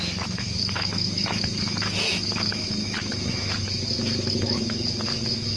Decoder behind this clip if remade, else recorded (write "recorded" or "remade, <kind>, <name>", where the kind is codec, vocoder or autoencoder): remade, autoencoder, DAC-VAE